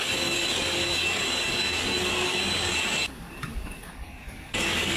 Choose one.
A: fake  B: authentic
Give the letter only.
A